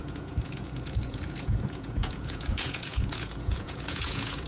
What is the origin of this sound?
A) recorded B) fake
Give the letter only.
B